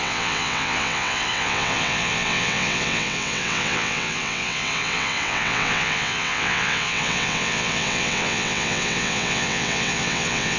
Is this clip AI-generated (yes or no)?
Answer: yes